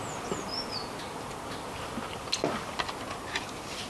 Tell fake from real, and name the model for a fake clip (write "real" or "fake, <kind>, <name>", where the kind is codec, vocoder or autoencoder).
real